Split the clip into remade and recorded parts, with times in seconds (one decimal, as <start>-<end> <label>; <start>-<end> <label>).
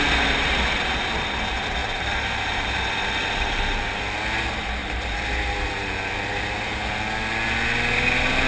0.0-1.8 recorded; 1.8-2.8 remade; 2.8-4.8 recorded; 4.8-7.0 remade; 7.0-8.5 recorded